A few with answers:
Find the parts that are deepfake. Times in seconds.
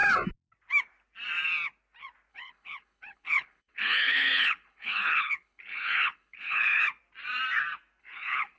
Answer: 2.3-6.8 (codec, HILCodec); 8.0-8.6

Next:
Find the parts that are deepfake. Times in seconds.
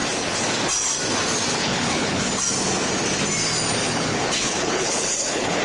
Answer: 1.5-2.3 (codec, HILCodec); 3.8-5.6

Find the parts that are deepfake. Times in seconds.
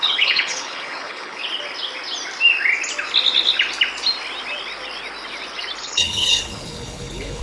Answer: 0.0-1.4 (codec, HILCodec); 5.8-7.4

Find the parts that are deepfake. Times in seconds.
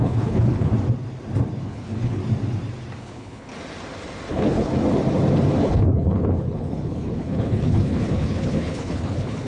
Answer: 0.0-0.7 (codec, HILCodec); 1.6-2.2; 3.0-3.5; 4.3-4.7; 5.6-9.5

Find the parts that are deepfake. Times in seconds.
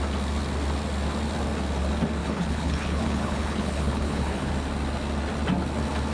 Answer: 2.2-4.5 (codec, HILCodec)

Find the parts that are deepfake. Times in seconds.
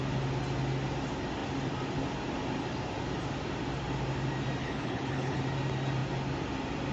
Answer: 4.6-5.4 (codec, HILCodec)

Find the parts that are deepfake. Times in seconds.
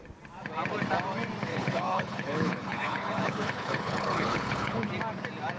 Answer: 1.5-4.9 (codec, HILCodec)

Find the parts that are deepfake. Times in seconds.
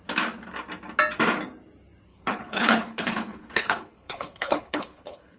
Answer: 2.1-5.4 (codec, HILCodec)